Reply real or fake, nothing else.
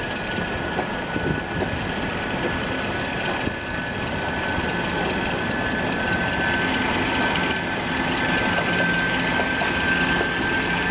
real